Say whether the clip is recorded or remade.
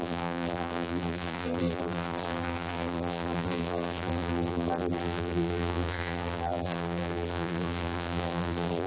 remade